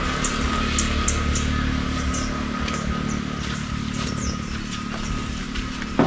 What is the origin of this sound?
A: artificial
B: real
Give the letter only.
B